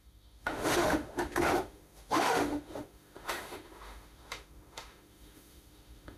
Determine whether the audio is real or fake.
fake